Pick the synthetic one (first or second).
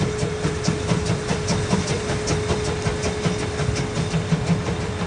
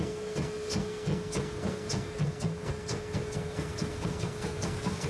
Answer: second